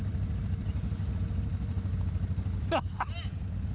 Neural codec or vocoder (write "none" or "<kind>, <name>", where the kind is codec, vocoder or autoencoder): none